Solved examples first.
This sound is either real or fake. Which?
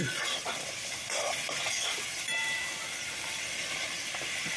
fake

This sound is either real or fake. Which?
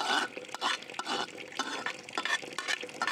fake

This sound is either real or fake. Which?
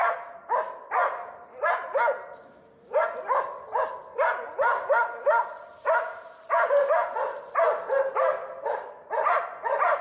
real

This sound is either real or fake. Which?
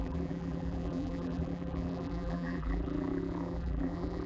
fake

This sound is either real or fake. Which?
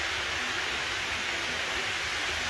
real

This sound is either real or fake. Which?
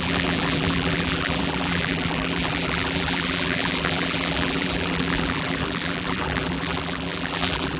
fake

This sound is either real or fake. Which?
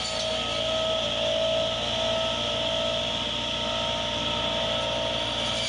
real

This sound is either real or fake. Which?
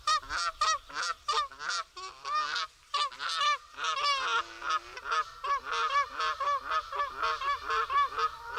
real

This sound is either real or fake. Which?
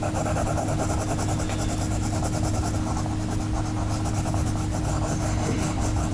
real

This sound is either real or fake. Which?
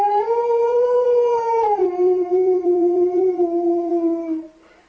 fake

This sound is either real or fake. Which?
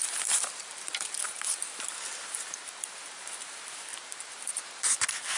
fake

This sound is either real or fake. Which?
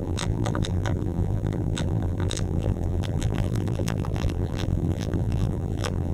fake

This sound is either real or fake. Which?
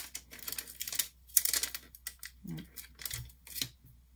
real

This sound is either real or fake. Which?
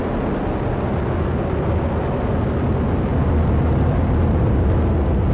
real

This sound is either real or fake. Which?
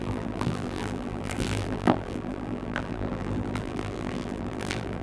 fake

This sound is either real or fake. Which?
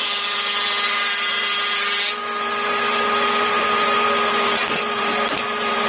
fake